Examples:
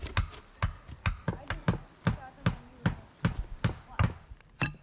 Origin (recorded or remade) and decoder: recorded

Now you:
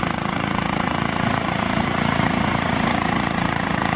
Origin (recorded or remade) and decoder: remade, vocoder, Vocos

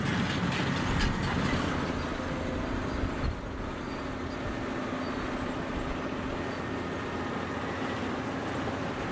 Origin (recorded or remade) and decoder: recorded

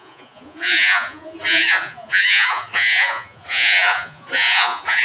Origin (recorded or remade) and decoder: remade, vocoder, Vocos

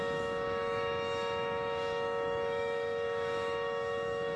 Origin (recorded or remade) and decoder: remade, autoencoder, DAC-VAE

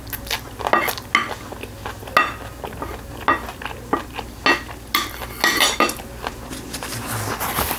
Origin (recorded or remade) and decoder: recorded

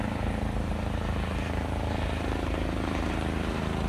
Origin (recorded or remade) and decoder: recorded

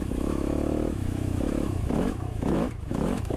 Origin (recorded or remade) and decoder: remade, autoencoder, DAC-VAE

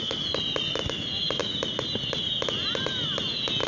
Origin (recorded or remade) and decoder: recorded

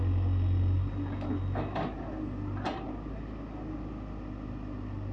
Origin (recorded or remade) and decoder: recorded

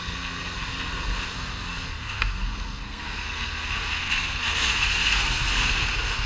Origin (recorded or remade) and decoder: remade, codec, SNAC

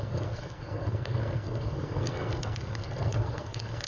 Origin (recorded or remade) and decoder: remade, codec, SNAC